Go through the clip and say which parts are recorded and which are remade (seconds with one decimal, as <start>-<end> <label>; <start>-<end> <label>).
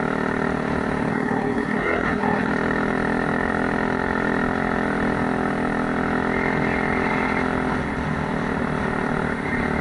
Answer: 0.0-1.1 recorded; 1.1-2.5 remade; 2.5-9.8 recorded